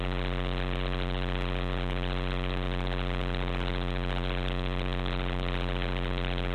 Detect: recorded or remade recorded